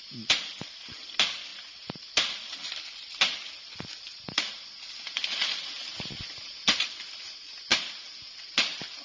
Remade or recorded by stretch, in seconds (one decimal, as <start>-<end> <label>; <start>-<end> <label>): 0.0-9.0 recorded